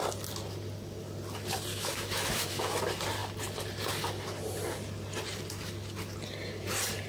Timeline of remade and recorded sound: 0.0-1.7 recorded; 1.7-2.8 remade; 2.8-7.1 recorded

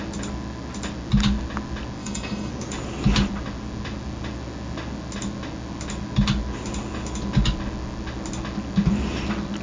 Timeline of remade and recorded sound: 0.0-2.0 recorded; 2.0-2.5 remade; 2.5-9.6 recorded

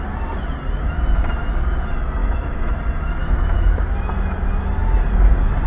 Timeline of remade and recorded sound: 0.0-2.2 recorded; 2.2-2.8 remade; 2.8-3.2 recorded; 3.2-3.9 remade; 3.9-5.7 recorded

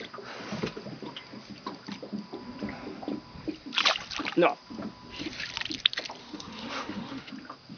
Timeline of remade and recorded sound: 0.0-6.2 recorded; 6.2-7.3 remade; 7.3-7.8 recorded

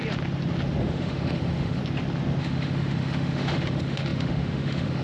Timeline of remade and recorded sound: 0.0-0.8 recorded; 0.8-1.8 remade; 1.8-2.4 recorded; 2.4-5.0 remade

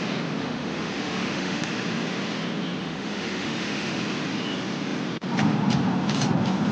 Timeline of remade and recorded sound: 0.0-0.4 recorded; 0.4-1.7 remade; 1.7-2.8 recorded; 2.8-4.0 remade; 4.0-6.7 recorded

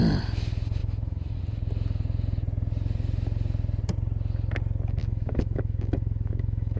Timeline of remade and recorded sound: 0.0-0.8 recorded; 0.8-1.4 remade; 1.4-5.0 recorded; 5.0-6.8 remade